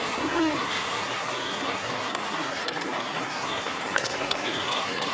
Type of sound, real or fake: fake